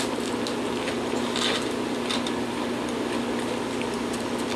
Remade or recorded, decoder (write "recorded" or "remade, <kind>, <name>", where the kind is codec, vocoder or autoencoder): recorded